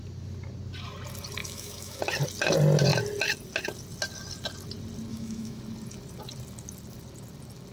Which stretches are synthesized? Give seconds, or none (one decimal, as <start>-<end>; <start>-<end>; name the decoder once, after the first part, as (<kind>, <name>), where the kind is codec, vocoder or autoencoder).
1.4-2.0 (autoencoder, DAC-VAE); 5.1-5.6